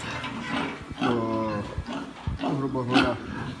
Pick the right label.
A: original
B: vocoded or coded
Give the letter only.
A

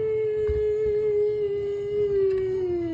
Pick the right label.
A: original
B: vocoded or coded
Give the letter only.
A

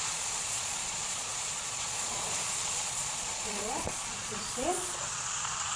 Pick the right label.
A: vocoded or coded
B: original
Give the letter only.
A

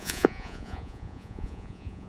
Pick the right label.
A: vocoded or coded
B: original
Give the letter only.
A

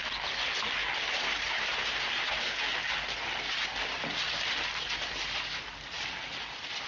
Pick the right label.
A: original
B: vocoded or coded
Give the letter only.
A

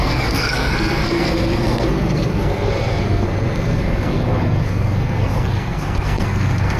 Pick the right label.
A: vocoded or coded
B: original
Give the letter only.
A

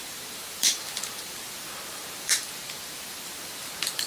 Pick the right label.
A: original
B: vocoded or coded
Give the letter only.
B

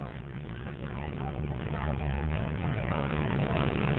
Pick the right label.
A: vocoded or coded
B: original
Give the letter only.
A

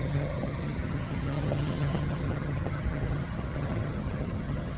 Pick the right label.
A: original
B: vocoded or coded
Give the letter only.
B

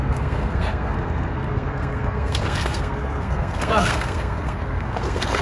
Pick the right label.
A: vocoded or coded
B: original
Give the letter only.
A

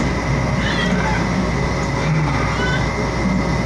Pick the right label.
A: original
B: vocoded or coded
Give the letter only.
A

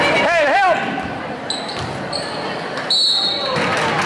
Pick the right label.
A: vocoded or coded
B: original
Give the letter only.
B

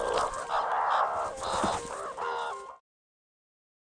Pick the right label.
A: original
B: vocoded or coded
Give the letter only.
A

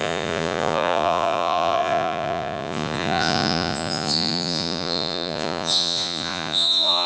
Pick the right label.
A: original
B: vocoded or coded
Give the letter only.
B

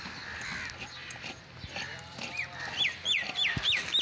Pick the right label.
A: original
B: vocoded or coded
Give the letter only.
A